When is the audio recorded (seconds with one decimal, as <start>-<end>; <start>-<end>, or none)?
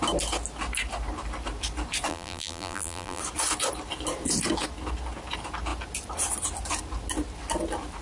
0.0-2.1; 3.2-8.0